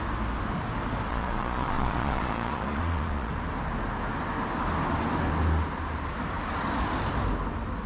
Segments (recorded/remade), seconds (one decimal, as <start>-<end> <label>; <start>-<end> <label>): 0.0-1.1 recorded; 1.1-3.3 remade; 3.3-7.9 recorded